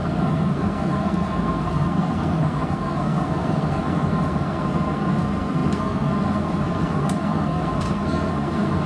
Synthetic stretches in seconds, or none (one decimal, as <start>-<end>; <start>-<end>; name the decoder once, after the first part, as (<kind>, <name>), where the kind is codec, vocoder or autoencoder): 0.0-8.9 (codec, SNAC)